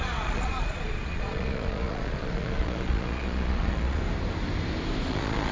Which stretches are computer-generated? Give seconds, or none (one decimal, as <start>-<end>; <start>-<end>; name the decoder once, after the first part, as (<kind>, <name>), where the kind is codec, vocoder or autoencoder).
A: 0.0-4.0 (vocoder, Vocos); 5.1-5.5